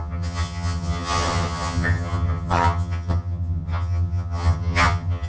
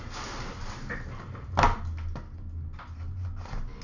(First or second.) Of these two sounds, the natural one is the second